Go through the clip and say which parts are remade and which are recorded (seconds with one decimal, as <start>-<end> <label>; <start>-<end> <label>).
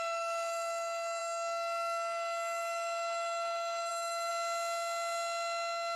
0.0-4.3 remade; 4.3-6.0 recorded